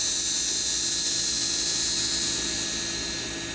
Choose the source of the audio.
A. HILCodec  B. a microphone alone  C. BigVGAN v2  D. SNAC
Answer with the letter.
B